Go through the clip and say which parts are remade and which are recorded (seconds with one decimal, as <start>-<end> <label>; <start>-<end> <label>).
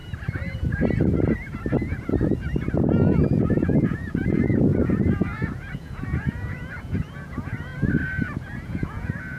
0.0-3.4 recorded; 3.4-7.7 remade; 7.7-8.2 recorded; 8.2-9.4 remade